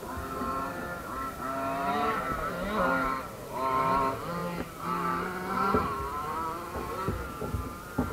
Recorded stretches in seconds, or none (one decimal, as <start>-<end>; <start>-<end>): 0.0-8.1